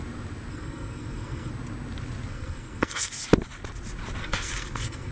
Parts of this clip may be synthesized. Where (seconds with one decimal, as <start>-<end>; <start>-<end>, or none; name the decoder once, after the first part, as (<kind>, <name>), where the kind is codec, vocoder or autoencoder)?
0.5-1.5 (codec, SNAC); 2.3-3.1; 4.2-5.1